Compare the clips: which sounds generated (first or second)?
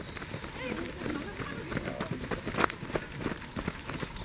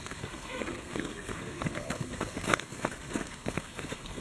second